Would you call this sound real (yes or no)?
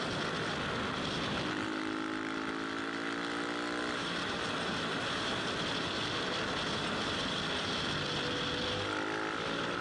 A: yes